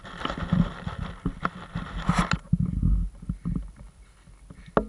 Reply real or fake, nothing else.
real